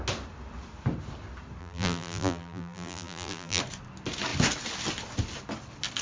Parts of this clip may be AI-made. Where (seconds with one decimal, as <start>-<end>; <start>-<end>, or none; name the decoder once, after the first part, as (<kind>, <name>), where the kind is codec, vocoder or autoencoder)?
1.6-3.6 (vocoder, BigVGAN v2)